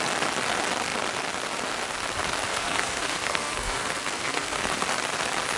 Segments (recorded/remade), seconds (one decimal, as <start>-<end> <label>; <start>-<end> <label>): 0.0-2.5 recorded; 2.5-4.6 remade; 4.6-5.6 recorded

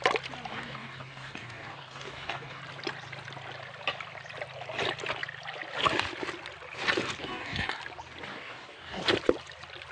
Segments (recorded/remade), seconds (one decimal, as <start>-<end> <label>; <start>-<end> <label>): 0.0-0.5 recorded; 0.5-2.6 remade; 2.6-7.2 recorded; 7.2-7.8 remade; 7.8-8.3 recorded; 8.3-9.0 remade; 9.0-9.9 recorded

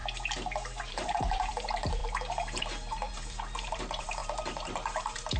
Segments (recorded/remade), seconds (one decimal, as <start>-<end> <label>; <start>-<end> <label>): 0.0-0.9 recorded; 0.9-2.0 remade; 2.0-2.6 recorded; 2.6-5.4 remade

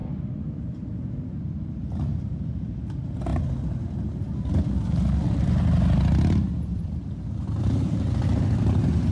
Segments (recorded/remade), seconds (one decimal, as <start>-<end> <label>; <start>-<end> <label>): 0.0-9.1 recorded

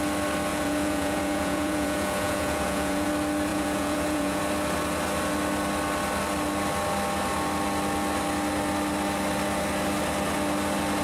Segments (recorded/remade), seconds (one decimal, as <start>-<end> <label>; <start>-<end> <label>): 0.0-0.5 recorded; 0.5-3.1 remade; 3.1-3.5 recorded; 3.5-4.4 remade; 4.4-11.0 recorded

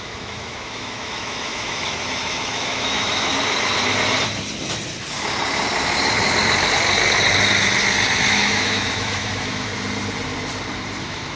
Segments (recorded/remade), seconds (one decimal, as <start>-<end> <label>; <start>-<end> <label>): 0.0-3.3 remade; 3.3-8.3 recorded; 8.3-9.7 remade; 9.7-11.0 recorded; 11.0-11.4 remade

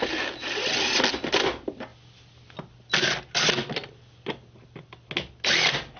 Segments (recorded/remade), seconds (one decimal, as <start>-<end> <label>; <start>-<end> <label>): 0.0-6.0 recorded

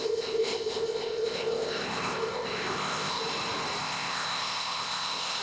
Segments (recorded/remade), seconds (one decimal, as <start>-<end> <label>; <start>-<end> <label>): 0.0-3.2 remade; 3.2-3.8 recorded; 3.8-5.4 remade